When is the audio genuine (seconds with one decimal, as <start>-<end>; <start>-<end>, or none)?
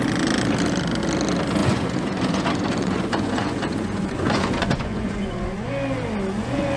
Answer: 0.0-1.6; 5.7-6.3